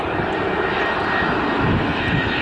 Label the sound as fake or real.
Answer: real